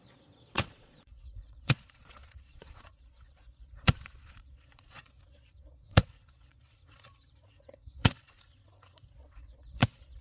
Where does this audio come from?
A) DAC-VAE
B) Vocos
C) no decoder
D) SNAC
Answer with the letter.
B